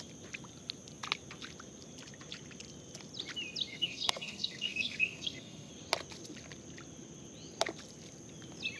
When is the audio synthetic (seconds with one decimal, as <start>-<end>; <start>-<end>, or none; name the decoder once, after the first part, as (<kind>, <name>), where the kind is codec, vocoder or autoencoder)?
3.7-5.7 (codec, SNAC)